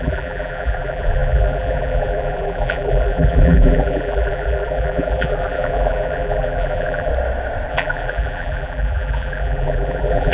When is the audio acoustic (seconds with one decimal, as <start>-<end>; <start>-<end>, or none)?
7.1-7.7